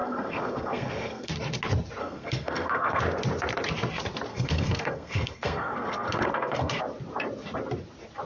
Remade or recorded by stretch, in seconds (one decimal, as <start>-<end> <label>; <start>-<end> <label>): 0.0-1.3 remade; 1.3-2.0 recorded; 2.0-3.0 remade; 3.0-4.3 recorded; 4.3-6.8 remade; 6.8-8.3 recorded